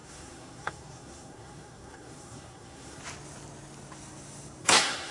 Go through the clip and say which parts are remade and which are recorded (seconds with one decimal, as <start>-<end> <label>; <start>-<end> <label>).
0.0-3.0 remade; 3.0-4.6 recorded; 4.6-5.1 remade